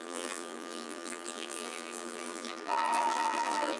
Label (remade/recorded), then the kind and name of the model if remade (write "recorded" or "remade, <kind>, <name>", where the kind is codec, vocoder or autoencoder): remade, vocoder, BigVGAN v2